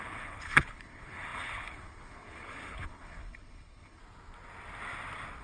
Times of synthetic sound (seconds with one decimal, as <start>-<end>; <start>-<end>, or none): 0.0-4.0

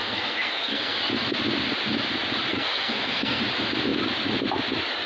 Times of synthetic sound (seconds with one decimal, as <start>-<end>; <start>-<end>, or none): 0.0-1.0; 2.5-3.4